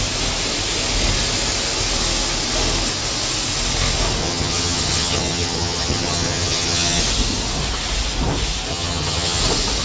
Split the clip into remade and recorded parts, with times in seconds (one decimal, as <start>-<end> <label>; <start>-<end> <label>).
0.0-4.2 recorded; 4.2-7.0 remade; 7.0-8.7 recorded; 8.7-9.4 remade; 9.4-9.8 recorded